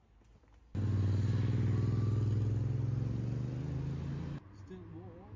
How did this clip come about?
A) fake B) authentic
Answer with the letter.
B